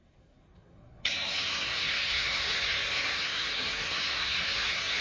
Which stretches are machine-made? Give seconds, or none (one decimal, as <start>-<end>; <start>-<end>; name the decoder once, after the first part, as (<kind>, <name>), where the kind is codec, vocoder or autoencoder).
0.0-5.0 (codec, SNAC)